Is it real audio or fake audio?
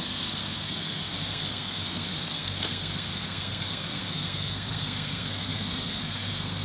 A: fake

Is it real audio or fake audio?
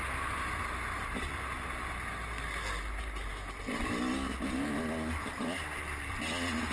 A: real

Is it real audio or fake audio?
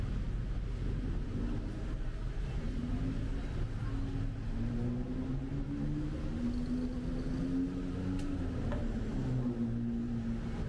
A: real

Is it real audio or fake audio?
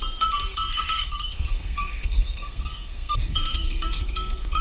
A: fake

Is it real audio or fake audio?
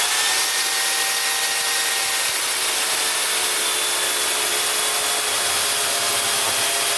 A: real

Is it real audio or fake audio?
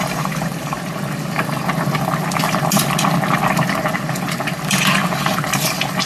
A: real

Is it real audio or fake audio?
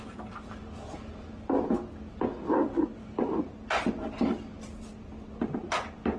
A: real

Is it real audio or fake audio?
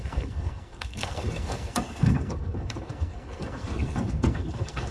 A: fake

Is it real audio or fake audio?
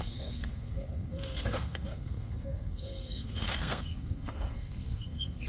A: fake